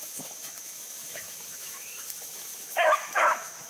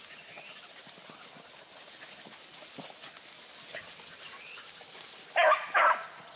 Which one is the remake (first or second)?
first